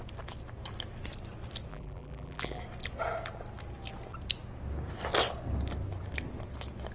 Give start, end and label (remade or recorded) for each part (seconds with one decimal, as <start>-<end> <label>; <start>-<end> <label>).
0.0-1.7 recorded; 1.7-2.6 remade; 2.6-6.9 recorded